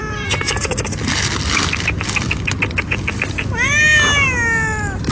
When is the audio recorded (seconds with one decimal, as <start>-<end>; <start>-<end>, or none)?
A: 0.0-5.1